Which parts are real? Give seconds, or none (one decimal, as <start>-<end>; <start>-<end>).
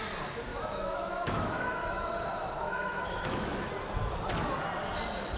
0.0-0.5; 3.7-5.4